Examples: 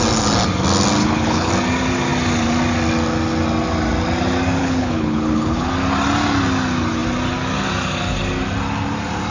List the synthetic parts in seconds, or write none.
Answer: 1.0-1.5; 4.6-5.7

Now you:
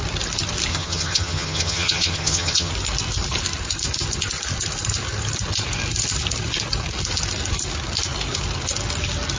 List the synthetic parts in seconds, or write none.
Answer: 0.7-2.7

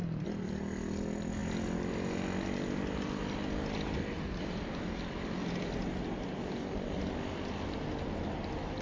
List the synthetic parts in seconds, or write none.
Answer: none

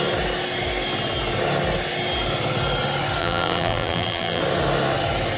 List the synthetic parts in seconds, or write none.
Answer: 3.2-4.4

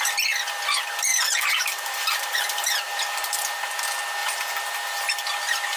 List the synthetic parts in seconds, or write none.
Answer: 1.1-3.8; 4.2-5.1